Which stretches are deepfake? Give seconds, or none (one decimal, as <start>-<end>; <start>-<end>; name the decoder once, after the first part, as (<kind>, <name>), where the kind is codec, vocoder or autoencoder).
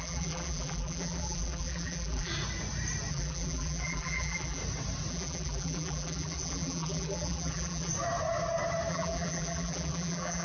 0.0-2.3 (vocoder, BigVGAN v2); 3.1-4.6; 5.1-7.9; 8.9-10.4